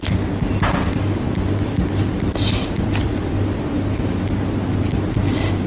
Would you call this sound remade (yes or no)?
no